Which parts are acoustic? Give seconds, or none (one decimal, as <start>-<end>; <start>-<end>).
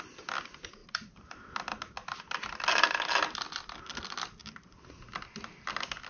0.0-0.8; 1.5-6.1